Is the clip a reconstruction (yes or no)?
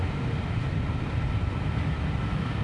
no